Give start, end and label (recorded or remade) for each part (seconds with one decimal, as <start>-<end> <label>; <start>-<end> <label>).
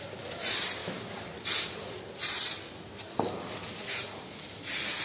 0.0-5.0 recorded